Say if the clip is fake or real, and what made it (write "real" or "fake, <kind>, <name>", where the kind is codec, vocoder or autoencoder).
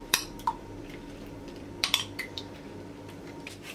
fake, vocoder, BigVGAN v2